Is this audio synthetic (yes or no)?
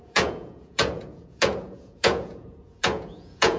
yes